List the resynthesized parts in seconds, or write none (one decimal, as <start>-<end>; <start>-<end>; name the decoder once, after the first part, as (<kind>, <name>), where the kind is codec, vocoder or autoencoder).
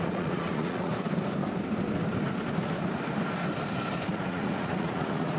0.0-0.9 (vocoder, Vocos); 4.1-5.4